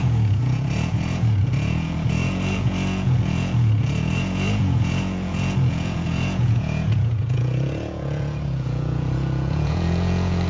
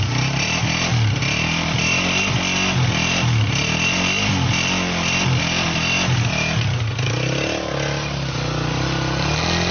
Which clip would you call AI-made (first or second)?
first